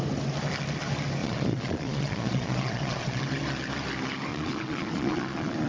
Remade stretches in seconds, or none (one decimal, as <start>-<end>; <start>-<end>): 1.2-3.2; 4.3-5.7